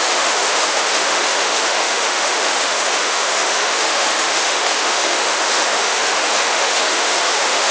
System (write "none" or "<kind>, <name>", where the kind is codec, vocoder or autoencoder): autoencoder, DAC-VAE